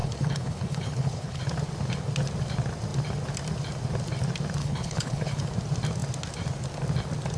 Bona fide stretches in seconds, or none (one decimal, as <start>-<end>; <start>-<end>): 1.4-4.6; 5.4-7.4

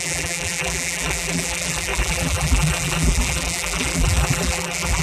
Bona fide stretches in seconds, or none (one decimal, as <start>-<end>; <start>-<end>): none

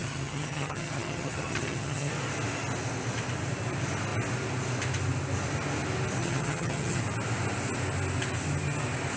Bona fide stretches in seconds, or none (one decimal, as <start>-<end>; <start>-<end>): 2.1-6.2; 7.0-9.2

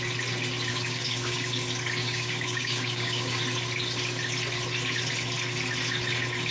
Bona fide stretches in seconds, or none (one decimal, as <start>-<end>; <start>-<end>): 0.0-0.7; 1.5-2.0; 3.4-6.5